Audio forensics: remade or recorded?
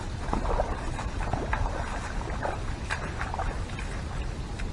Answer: recorded